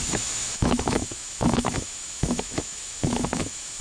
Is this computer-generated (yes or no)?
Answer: yes